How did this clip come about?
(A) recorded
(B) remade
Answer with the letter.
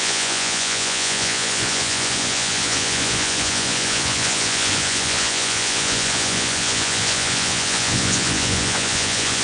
B